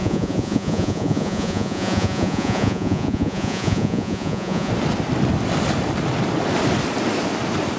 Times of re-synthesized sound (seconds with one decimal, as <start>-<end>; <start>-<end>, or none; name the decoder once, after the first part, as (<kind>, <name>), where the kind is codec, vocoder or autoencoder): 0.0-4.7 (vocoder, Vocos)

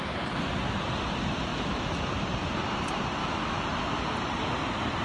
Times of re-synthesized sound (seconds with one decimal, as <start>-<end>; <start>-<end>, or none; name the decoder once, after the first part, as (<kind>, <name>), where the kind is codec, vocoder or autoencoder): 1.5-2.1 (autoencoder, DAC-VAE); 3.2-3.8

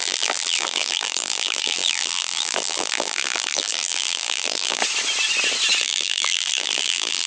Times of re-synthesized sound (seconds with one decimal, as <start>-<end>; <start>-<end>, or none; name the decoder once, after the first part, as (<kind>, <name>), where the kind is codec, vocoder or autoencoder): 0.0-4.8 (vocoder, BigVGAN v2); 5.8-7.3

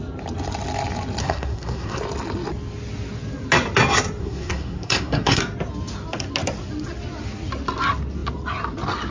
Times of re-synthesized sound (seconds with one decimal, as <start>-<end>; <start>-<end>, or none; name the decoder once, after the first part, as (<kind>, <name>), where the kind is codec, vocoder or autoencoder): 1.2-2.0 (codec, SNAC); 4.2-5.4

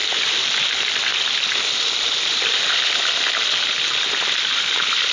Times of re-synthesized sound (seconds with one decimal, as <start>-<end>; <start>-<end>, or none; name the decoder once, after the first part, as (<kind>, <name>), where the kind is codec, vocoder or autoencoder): none

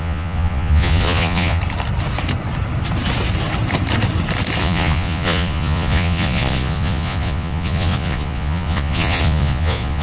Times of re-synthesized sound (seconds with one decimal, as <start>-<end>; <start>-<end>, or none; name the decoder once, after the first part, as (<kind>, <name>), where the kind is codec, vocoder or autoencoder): 0.0-1.6 (vocoder, Vocos); 4.6-10.0

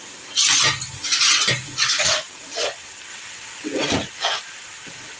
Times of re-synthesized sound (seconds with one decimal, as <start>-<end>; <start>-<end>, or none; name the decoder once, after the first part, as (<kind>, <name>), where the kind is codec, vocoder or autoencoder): 1.9-2.5 (vocoder, WaveNeXt); 3.1-3.9